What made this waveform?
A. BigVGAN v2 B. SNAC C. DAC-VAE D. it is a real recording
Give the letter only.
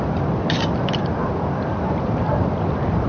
A